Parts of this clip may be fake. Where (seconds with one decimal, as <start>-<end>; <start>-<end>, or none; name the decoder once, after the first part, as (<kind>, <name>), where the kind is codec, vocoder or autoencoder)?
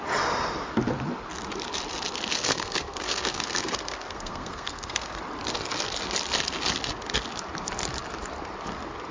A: 2.3-5.2 (codec, SNAC)